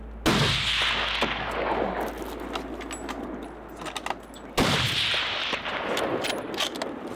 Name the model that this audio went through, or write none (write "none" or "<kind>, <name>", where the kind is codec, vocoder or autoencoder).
none